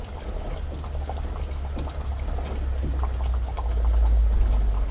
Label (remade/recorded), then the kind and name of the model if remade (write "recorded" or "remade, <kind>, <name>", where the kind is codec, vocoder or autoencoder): recorded